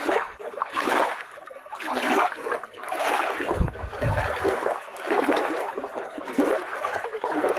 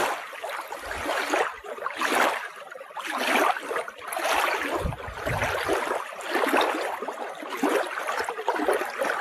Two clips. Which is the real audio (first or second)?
second